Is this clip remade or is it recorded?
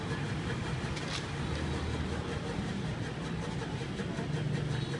recorded